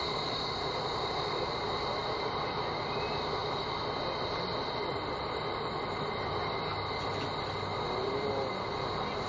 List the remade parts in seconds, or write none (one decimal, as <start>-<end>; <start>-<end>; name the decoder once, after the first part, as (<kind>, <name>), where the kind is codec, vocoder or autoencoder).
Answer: none

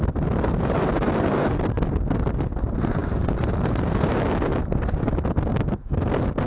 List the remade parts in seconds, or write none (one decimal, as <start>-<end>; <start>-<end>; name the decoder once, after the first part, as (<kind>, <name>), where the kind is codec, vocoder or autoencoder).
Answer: none

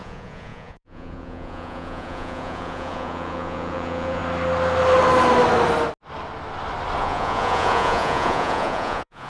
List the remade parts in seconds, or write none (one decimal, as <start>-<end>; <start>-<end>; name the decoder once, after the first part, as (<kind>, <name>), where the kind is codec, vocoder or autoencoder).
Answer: 0.0-4.2 (vocoder, Vocos); 7.0-9.3

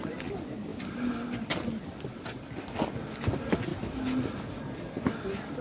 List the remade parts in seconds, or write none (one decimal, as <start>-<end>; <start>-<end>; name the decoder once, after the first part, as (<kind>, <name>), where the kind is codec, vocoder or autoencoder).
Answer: none

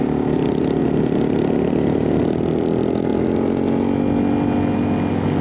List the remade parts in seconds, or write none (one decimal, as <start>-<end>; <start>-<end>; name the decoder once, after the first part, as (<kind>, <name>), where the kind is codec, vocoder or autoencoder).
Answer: none

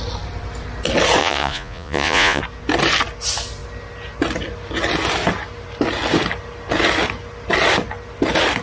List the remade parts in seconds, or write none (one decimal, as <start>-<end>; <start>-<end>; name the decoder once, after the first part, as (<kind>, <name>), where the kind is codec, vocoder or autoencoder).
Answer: 1.2-2.4 (vocoder, Vocos)